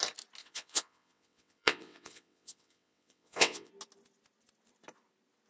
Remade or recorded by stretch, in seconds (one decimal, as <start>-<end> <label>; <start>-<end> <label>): 0.0-0.4 recorded; 0.4-3.7 remade; 3.7-5.5 recorded